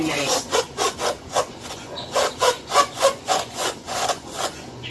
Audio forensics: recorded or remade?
remade